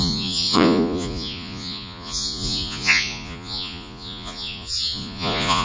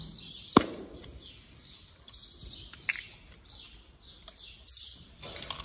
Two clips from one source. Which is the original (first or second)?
second